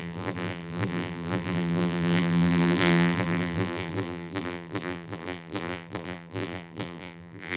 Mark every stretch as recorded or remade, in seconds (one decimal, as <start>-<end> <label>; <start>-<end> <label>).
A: 0.0-7.6 remade